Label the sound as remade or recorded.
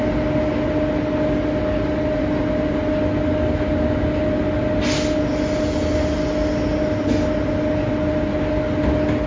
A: recorded